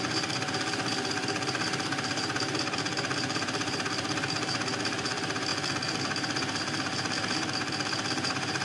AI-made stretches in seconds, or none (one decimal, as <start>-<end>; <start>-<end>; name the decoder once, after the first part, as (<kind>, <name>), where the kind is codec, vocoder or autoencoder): 0.0-5.5 (vocoder, BigVGAN v2); 6.0-8.6